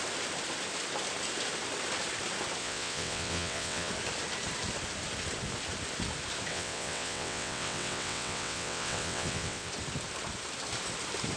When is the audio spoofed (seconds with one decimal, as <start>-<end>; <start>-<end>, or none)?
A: 2.6-3.9; 6.5-9.7